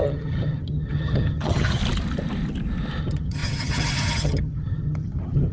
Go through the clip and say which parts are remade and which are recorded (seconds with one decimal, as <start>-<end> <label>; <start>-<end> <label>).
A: 0.0-1.8 remade; 1.8-3.0 recorded; 3.0-5.5 remade